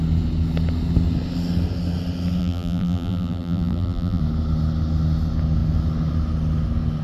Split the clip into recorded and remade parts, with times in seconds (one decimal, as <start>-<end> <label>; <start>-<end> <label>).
0.0-2.4 recorded; 2.4-4.2 remade; 4.2-7.0 recorded